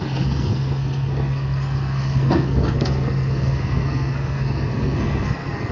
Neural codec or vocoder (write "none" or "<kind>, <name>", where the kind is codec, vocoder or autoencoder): codec, SNAC